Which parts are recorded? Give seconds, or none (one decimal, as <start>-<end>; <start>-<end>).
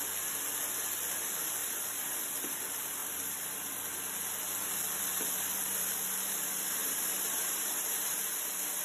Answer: 0.0-1.6; 2.5-3.0; 3.9-6.8; 8.1-8.8